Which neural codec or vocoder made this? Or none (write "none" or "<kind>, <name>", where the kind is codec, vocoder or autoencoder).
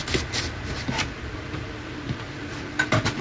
none